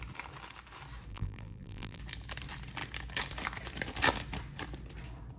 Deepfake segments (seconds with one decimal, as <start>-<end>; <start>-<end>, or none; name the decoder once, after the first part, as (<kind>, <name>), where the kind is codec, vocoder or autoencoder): 1.1-2.0 (vocoder, BigVGAN v2)